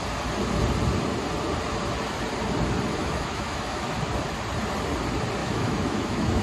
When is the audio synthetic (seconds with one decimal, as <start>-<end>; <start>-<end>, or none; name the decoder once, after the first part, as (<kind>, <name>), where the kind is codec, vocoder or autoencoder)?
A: 3.0-3.9 (autoencoder, DAC-VAE); 5.4-6.4